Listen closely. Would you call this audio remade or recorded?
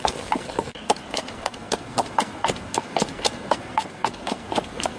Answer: remade